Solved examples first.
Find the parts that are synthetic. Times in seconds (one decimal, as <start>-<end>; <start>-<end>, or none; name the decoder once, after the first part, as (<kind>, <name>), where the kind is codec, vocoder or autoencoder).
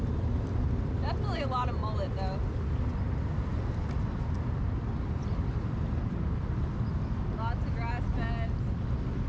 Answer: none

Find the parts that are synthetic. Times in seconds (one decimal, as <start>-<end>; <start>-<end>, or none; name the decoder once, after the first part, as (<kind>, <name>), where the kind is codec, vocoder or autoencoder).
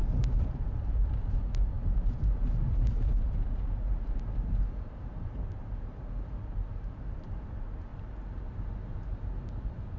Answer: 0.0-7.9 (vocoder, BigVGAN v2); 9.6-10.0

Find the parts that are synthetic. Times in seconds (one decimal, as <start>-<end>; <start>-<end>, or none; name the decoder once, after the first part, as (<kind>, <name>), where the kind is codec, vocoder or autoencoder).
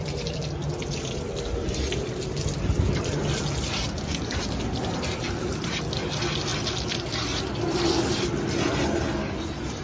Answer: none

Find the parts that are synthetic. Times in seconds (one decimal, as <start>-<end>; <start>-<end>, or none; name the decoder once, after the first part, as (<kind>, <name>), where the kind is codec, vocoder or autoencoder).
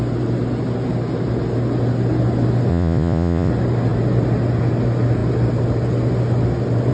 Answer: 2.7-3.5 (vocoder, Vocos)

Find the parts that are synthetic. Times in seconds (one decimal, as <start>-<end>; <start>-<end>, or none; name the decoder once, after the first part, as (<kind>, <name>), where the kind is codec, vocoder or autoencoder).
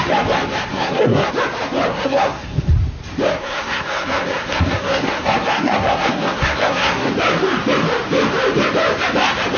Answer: 0.7-1.3 (codec, SNAC); 1.9-2.7; 3.4-7.1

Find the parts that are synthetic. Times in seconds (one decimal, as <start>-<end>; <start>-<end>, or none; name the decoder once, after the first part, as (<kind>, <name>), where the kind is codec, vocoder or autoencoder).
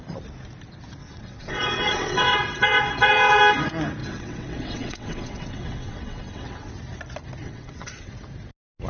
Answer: 1.0-3.4 (vocoder, WaveNeXt); 4.0-6.7; 7.4-8.1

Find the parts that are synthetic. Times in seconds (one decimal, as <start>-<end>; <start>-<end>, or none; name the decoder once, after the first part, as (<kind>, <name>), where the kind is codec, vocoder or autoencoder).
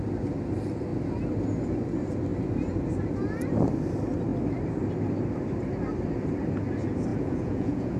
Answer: 7.1-8.0 (vocoder, Vocos)